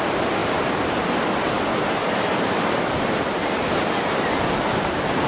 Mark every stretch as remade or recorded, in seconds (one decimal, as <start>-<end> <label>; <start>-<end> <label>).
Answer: 0.0-2.0 recorded; 2.0-5.3 remade